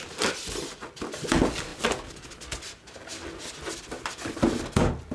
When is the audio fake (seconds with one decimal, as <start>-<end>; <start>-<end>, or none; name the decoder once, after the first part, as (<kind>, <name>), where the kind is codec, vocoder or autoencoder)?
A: none